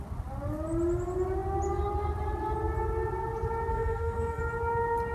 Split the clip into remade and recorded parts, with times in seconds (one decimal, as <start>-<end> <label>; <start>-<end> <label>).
0.0-3.7 recorded; 3.7-4.4 remade; 4.4-5.1 recorded